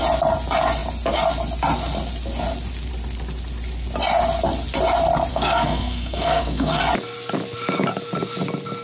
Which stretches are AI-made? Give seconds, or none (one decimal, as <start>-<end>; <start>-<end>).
5.3-6.8

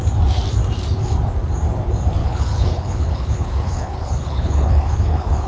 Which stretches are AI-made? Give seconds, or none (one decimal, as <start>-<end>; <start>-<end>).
2.2-5.5

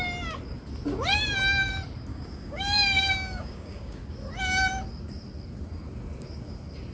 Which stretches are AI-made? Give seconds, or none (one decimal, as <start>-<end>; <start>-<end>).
2.1-4.0

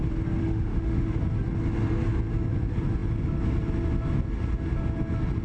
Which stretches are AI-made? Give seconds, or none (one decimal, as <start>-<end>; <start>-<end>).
0.4-1.2

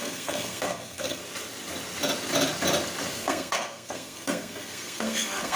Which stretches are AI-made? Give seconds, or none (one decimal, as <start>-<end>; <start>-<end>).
0.0-1.2; 3.1-5.5